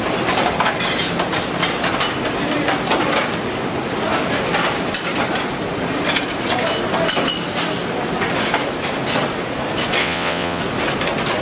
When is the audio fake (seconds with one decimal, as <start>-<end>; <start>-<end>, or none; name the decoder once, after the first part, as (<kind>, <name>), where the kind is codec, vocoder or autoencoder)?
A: 10.0-10.6 (vocoder, WaveNeXt)